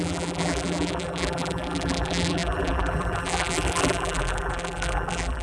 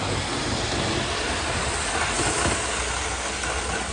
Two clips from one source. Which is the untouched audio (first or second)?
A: second